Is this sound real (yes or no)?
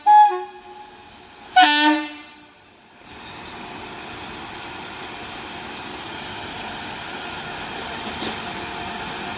yes